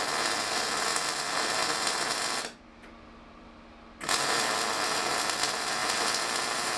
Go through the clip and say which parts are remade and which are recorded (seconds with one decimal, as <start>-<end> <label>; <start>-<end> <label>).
0.0-6.8 recorded